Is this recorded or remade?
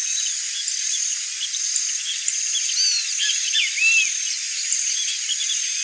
recorded